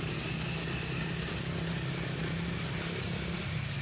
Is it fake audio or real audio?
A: real